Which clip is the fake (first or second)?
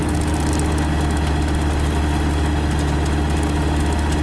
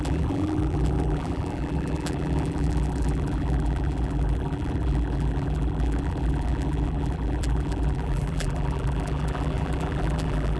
second